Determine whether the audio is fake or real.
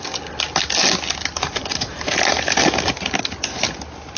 real